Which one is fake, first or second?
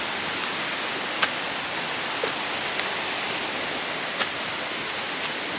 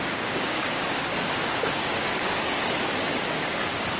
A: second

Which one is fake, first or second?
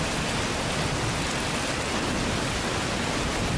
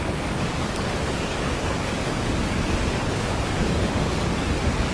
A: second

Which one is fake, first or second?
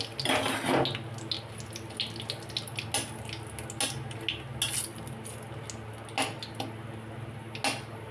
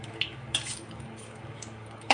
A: second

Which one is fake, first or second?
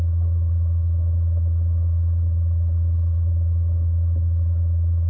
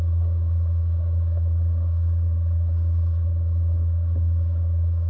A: second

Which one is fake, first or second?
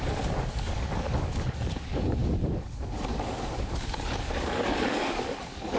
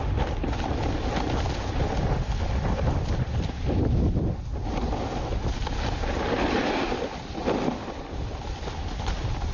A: first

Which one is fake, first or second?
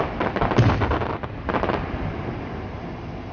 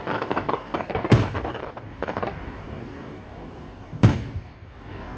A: second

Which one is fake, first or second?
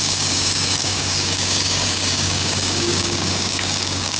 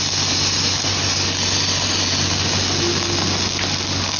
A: first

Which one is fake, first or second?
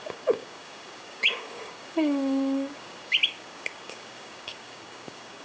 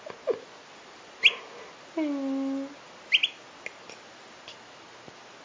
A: first